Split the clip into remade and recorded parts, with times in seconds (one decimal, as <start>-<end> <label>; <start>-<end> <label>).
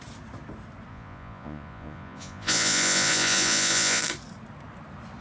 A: 0.0-0.9 recorded; 0.9-4.0 remade; 4.0-5.2 recorded